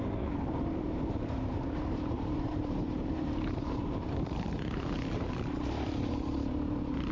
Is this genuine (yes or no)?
no